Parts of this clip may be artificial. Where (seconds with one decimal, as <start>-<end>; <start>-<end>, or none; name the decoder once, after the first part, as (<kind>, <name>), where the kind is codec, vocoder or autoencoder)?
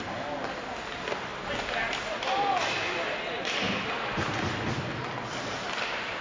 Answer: none